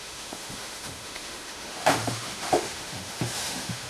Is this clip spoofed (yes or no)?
yes